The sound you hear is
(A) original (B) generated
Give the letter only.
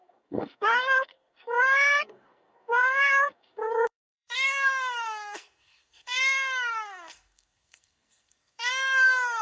B